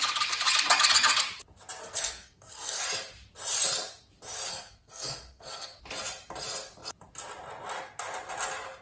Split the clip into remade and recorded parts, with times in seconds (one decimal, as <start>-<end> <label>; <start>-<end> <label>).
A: 0.0-1.8 recorded; 1.8-2.8 remade; 2.8-4.5 recorded; 4.5-5.8 remade; 5.8-8.8 recorded